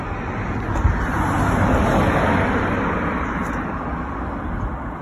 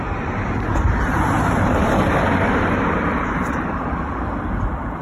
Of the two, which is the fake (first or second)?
second